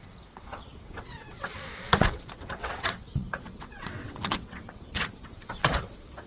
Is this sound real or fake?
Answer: fake